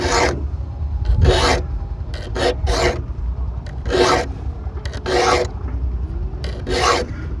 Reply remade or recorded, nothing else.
recorded